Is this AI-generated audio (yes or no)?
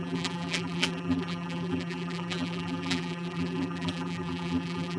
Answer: yes